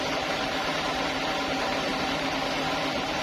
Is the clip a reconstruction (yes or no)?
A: no